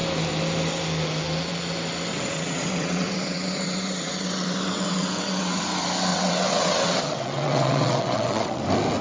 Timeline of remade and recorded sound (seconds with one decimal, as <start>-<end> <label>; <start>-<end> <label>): 0.0-2.1 recorded; 2.1-5.6 remade; 5.6-6.1 recorded; 6.1-8.6 remade; 8.6-9.0 recorded